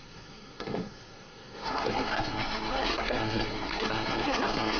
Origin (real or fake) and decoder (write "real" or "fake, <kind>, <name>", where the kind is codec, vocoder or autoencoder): fake, codec, SNAC